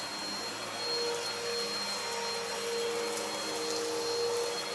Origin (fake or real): real